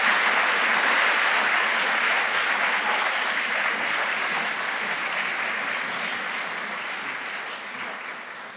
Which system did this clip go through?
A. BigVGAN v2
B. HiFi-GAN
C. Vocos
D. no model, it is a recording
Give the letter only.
D